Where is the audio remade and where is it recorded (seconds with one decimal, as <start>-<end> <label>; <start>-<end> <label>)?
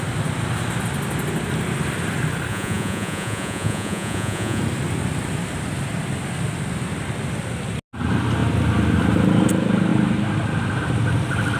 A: 0.0-2.5 recorded; 2.5-4.6 remade; 4.6-11.6 recorded